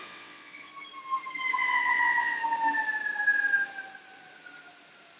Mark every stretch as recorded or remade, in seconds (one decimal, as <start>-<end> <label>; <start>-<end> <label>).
0.0-0.7 remade; 0.7-1.5 recorded; 1.5-2.4 remade; 2.4-5.2 recorded